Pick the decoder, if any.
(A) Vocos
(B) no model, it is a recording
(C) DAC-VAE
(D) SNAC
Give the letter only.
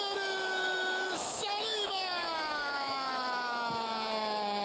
C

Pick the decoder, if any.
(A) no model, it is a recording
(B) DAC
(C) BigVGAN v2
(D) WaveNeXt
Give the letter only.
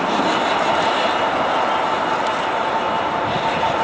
A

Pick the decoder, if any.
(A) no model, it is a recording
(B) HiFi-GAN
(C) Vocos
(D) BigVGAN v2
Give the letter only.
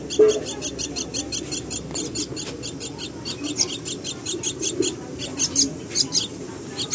A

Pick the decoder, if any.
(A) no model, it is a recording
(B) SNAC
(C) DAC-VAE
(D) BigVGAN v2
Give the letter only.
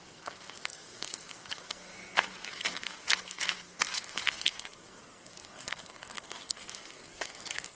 B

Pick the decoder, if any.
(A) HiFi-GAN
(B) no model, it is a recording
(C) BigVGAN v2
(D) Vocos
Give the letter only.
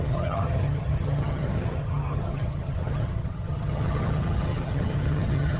A